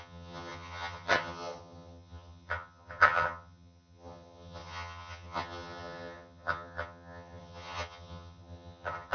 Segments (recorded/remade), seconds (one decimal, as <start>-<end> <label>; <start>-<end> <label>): 0.0-9.1 remade